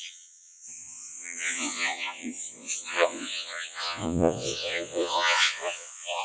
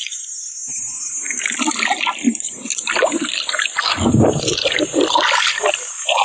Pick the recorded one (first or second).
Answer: second